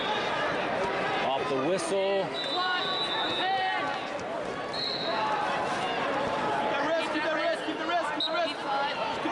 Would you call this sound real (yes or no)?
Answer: yes